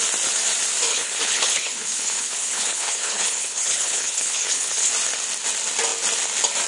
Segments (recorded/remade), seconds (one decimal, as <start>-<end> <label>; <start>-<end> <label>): 0.0-0.9 recorded; 0.9-4.9 remade; 4.9-6.7 recorded